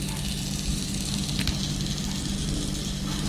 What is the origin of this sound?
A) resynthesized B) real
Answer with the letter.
B